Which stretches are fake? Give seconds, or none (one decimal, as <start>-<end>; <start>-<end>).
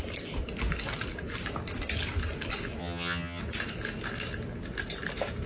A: 2.8-3.4